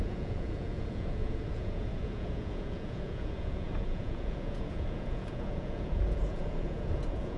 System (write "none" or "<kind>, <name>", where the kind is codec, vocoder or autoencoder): vocoder, Vocos